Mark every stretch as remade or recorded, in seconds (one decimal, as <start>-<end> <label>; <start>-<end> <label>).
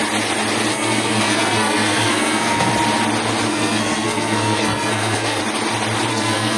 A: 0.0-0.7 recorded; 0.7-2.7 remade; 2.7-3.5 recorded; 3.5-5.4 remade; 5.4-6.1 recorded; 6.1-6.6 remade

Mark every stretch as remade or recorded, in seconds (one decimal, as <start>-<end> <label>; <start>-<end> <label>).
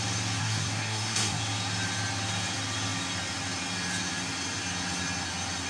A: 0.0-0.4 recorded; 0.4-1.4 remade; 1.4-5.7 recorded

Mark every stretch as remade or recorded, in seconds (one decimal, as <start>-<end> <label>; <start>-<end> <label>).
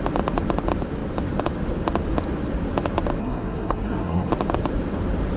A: 0.0-3.2 recorded; 3.2-4.3 remade; 4.3-5.4 recorded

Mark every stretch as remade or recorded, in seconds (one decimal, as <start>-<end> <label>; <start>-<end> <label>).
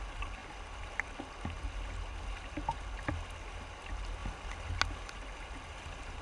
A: 0.0-6.2 recorded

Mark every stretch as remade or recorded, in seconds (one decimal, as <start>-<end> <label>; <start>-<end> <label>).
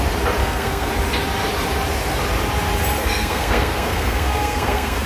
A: 0.0-0.4 recorded; 0.4-0.9 remade; 0.9-3.0 recorded; 3.0-5.1 remade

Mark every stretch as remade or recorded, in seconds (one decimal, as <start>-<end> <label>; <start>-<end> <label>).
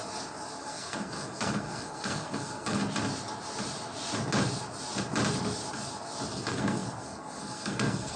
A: 0.0-0.6 recorded; 0.6-2.8 remade; 2.8-6.3 recorded; 6.3-8.2 remade